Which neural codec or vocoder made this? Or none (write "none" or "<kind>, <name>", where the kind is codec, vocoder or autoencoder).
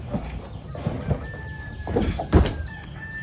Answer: none